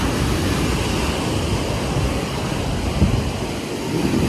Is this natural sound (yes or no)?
yes